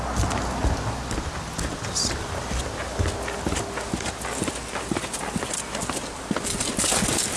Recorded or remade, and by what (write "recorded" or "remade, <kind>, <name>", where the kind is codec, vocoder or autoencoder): recorded